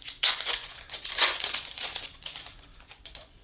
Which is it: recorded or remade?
remade